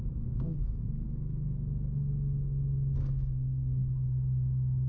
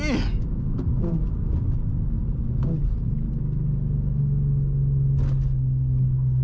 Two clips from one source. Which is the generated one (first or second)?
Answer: first